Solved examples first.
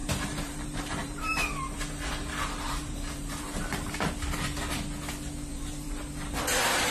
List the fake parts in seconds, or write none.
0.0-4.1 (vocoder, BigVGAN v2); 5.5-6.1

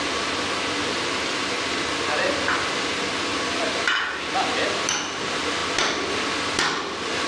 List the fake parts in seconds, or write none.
none

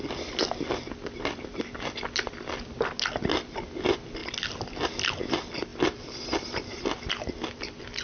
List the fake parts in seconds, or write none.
5.7-7.1 (vocoder, BigVGAN v2)

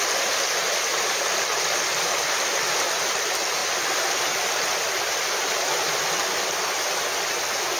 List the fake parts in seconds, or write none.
1.9-2.6 (vocoder, BigVGAN v2)

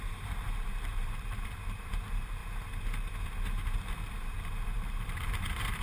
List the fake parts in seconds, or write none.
0.0-2.4 (vocoder, BigVGAN v2); 4.7-5.8

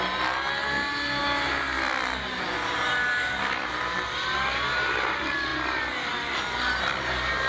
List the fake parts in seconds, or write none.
none

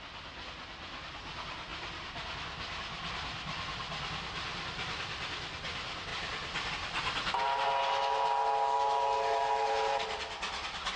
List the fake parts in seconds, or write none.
1.7-5.2 (vocoder, BigVGAN v2); 6.1-6.7

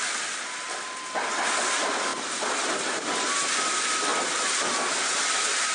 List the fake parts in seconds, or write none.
0.0-2.1 (vocoder, BigVGAN v2); 3.5-4.1; 5.3-5.7